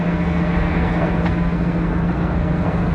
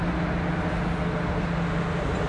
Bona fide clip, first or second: second